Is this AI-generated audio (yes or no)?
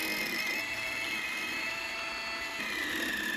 no